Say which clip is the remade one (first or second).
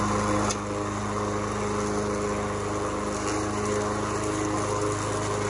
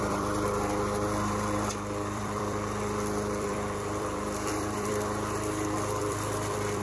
second